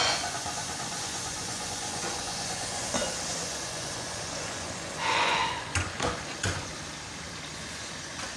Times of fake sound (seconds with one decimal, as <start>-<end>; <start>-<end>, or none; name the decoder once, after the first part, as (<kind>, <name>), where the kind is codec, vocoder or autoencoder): 0.0-6.7 (vocoder, Vocos); 7.5-8.4